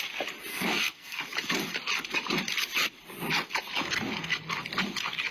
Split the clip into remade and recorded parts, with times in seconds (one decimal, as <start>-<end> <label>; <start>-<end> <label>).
0.0-0.5 recorded; 0.5-1.2 remade; 1.2-5.3 recorded